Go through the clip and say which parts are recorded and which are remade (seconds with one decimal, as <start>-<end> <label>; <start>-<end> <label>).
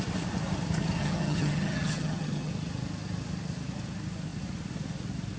0.0-1.0 recorded; 1.0-2.5 remade; 2.5-5.4 recorded